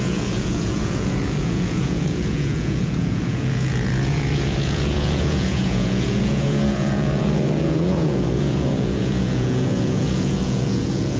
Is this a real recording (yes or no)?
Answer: no